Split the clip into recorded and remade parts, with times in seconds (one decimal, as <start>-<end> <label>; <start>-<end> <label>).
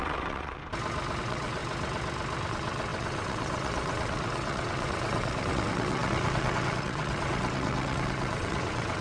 0.0-0.6 remade; 0.6-1.2 recorded; 1.2-1.6 remade; 1.6-2.5 recorded; 2.5-9.0 remade